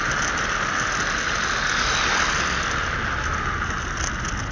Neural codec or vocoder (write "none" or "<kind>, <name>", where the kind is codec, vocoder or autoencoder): none